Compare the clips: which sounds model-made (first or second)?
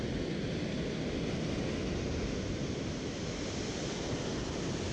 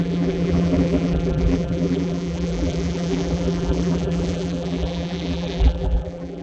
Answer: second